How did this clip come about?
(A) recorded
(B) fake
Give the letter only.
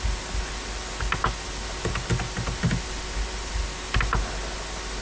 A